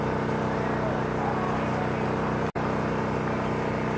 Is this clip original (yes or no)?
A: yes